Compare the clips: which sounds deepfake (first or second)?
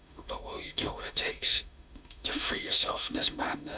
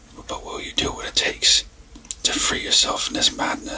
first